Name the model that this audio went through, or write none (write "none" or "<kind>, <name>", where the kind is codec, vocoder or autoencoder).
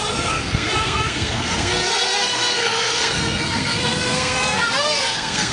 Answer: codec, SNAC